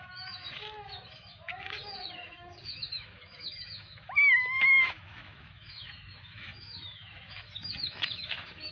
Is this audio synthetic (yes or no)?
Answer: yes